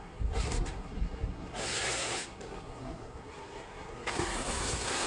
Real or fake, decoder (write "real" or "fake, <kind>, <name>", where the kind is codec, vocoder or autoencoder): fake, codec, SNAC